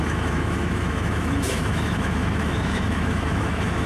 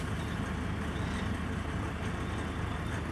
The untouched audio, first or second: second